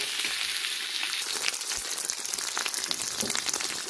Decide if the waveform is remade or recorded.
recorded